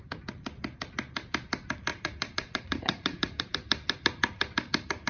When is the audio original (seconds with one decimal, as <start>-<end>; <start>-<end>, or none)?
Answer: 0.0-1.9; 3.4-5.1